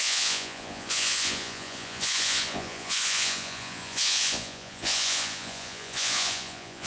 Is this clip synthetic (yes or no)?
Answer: yes